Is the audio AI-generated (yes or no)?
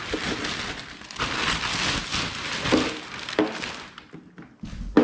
no